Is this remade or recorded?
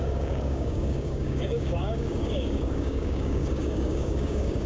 remade